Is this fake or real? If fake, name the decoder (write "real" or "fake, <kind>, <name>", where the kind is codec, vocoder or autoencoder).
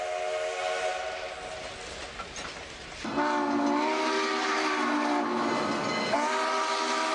real